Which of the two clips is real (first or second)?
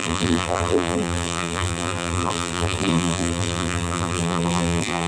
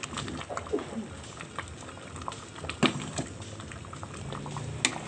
second